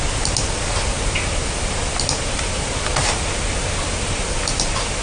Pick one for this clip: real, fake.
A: real